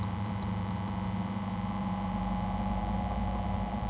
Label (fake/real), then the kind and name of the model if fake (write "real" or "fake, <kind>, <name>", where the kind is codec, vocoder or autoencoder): fake, vocoder, BigVGAN v2